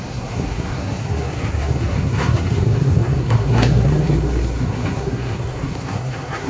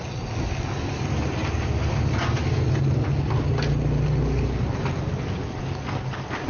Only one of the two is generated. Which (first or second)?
first